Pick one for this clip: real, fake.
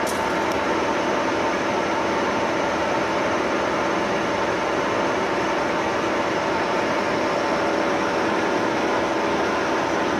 real